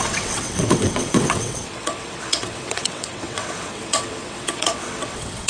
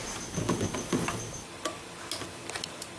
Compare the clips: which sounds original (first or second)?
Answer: second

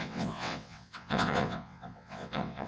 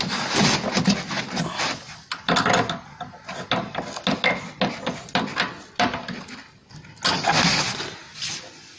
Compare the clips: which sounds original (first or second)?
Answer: second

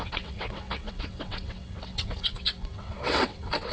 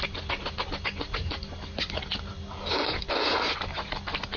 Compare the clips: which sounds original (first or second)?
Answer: second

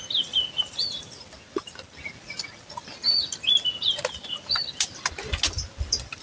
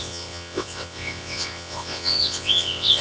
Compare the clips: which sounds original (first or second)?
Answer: first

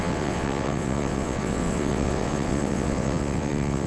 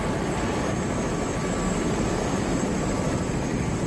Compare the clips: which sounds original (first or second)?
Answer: second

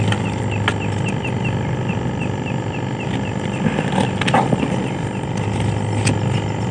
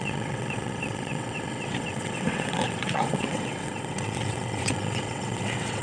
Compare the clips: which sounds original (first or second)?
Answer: first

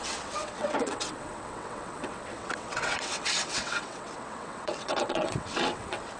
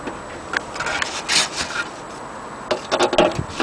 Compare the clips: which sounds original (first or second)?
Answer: second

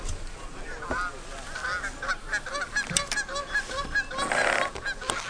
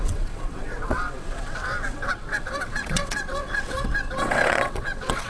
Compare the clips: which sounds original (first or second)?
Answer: first